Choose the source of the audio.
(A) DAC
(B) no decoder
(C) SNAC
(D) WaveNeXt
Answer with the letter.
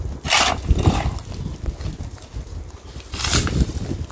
B